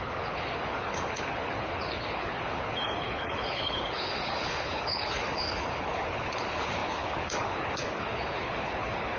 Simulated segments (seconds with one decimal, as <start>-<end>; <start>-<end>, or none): 0.0-9.2